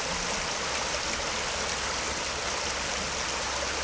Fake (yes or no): no